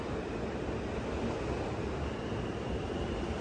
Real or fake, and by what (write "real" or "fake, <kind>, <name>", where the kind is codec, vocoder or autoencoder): real